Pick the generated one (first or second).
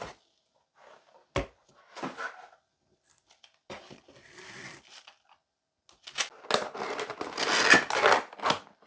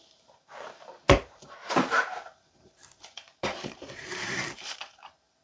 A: second